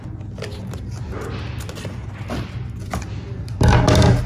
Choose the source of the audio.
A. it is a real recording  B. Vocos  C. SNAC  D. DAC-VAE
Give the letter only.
A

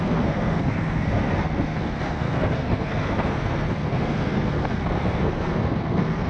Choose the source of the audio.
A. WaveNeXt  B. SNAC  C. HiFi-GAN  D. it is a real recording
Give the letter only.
B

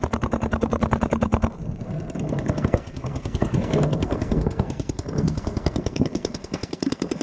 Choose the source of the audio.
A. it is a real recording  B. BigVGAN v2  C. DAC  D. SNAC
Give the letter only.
D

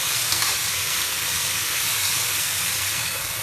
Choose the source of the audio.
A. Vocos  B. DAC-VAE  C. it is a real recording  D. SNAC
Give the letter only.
D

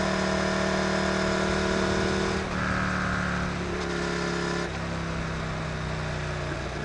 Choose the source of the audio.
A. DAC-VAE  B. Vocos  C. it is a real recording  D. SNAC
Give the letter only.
C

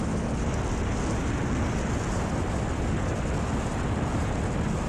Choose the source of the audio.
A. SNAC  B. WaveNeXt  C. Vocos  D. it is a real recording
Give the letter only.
D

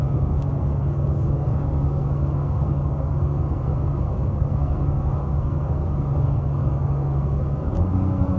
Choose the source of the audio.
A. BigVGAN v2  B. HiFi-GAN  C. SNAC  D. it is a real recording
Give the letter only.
C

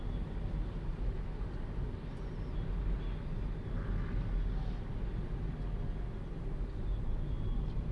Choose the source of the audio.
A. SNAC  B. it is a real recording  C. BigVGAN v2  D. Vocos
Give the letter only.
B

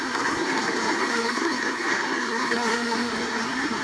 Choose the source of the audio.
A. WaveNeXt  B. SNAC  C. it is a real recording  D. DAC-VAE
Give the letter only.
B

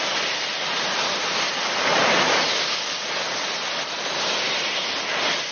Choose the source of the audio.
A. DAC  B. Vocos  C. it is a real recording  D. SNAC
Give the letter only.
C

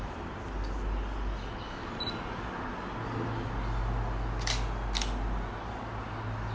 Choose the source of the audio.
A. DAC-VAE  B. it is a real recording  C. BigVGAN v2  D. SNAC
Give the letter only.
B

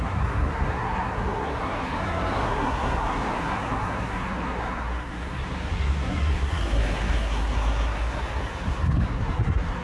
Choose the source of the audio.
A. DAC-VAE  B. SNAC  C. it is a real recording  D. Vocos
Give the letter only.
B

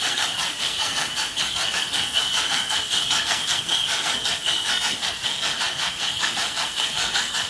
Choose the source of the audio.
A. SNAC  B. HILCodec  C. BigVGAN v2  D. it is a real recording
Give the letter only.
A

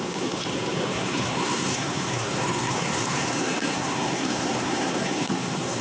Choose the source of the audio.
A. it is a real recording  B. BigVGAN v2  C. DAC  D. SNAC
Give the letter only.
D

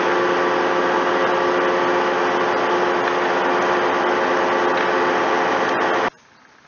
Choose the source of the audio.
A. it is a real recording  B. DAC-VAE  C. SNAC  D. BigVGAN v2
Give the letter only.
A